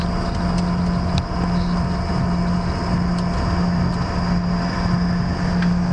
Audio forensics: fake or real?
real